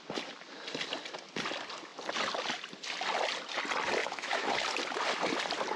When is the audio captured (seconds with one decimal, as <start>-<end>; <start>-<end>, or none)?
0.0-4.0; 4.5-5.8